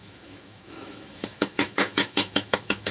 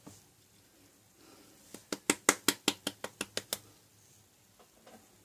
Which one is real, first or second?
second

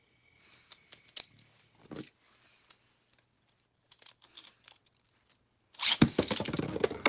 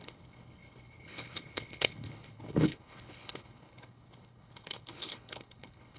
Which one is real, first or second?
first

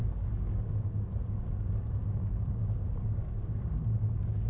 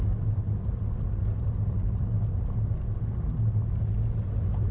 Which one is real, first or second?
second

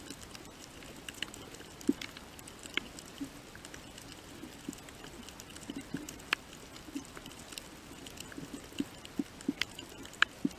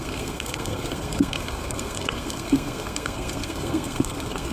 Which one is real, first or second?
first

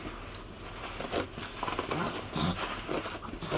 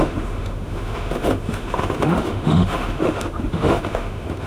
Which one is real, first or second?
first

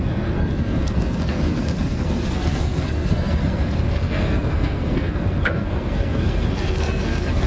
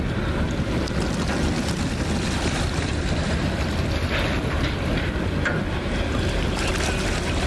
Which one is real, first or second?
second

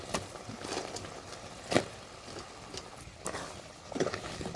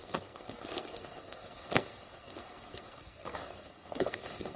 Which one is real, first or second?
first